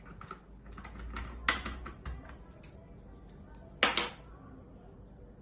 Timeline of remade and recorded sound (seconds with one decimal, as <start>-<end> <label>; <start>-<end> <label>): 0.0-5.4 recorded